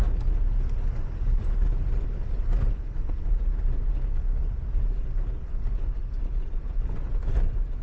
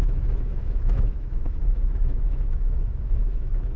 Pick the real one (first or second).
first